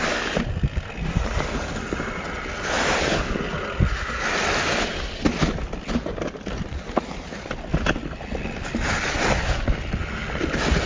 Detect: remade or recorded recorded